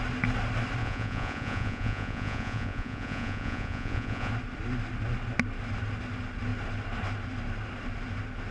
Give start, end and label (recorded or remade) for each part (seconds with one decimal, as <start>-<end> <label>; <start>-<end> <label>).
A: 0.0-0.8 recorded; 0.8-4.3 remade; 4.3-8.5 recorded